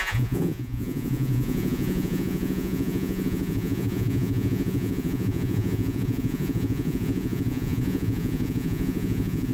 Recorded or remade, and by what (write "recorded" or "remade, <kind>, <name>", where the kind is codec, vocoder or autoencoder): remade, vocoder, Vocos